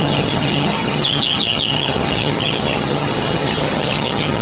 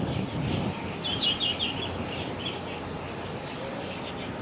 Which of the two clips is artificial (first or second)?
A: first